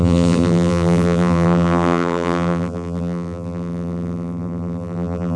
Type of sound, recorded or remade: remade